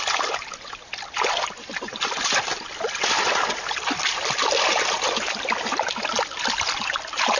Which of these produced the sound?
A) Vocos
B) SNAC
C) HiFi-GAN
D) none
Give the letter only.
D